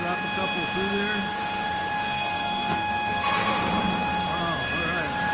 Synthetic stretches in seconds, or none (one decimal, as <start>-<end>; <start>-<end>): 1.9-3.5

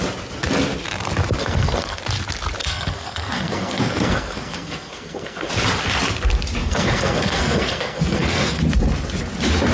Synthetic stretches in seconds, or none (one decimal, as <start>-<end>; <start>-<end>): 1.4-2.0; 2.6-5.5; 6.6-8.6

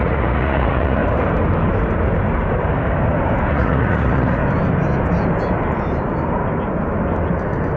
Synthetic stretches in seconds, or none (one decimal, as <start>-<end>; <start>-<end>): 0.0-1.0; 3.5-4.4

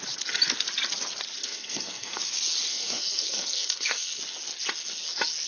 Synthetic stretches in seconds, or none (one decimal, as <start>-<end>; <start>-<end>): 1.4-2.2; 2.7-4.2

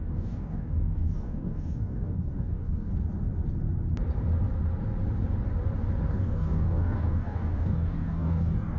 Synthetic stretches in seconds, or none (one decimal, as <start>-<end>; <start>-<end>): 0.0-2.9; 6.1-8.8

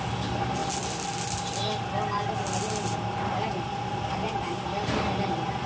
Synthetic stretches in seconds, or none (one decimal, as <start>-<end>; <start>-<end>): none